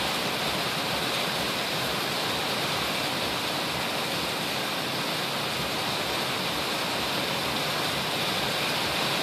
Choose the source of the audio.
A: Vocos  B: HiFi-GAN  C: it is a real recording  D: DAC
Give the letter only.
C